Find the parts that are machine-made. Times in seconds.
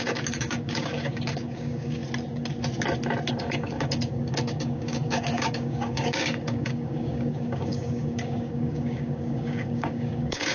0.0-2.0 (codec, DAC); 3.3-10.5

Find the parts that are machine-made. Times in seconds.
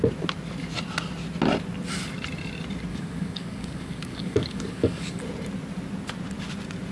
2.9-5.2 (codec, DAC)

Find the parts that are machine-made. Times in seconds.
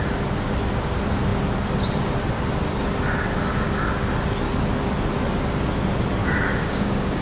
6.2-7.2 (codec, DAC)